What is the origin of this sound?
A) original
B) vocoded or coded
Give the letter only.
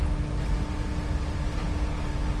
A